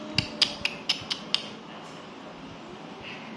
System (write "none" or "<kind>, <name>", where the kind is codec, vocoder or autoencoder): none